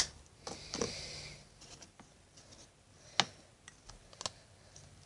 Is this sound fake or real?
real